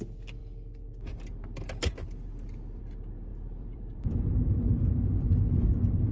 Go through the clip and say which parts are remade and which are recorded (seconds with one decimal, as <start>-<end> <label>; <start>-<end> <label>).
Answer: 0.0-3.3 recorded; 3.3-4.8 remade; 4.8-6.1 recorded